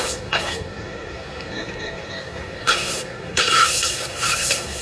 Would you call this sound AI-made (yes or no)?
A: yes